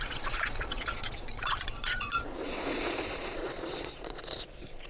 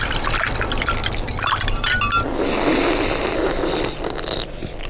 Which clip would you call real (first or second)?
second